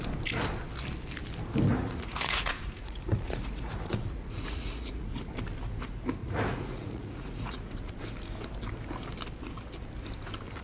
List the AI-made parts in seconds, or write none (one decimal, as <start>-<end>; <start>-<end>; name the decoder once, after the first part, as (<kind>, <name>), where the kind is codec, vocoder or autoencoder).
1.7-5.3 (vocoder, Vocos); 6.2-7.9